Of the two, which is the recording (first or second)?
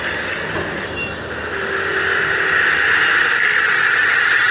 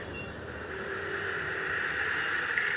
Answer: first